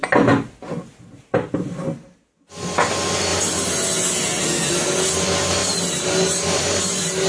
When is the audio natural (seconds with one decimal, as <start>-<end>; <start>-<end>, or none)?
0.0-7.3